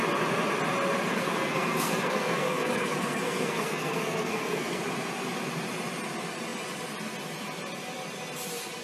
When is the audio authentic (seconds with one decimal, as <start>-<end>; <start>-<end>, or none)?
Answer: 0.0-1.1; 4.8-8.8